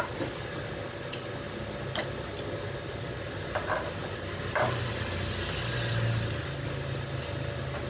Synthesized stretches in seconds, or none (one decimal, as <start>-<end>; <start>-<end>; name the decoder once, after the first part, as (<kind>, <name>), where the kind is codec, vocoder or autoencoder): none

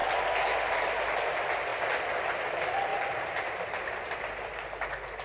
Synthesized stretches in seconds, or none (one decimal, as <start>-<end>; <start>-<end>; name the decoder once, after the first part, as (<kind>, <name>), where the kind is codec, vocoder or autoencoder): 2.9-4.2 (vocoder, BigVGAN v2)

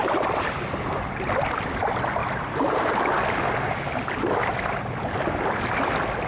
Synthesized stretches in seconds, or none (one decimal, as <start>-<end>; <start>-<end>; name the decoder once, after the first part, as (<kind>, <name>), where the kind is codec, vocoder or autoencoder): none

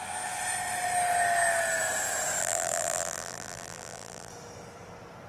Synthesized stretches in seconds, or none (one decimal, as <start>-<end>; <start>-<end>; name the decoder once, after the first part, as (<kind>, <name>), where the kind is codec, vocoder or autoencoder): 2.4-4.3 (vocoder, BigVGAN v2)

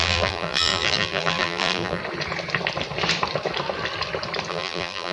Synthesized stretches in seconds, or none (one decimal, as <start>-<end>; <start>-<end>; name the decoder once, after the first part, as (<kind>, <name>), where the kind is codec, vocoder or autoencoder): 0.0-2.0 (vocoder, BigVGAN v2); 4.5-5.1